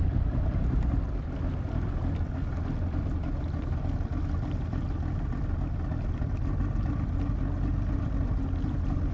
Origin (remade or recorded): recorded